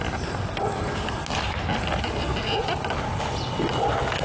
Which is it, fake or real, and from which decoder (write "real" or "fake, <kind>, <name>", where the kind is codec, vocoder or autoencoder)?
real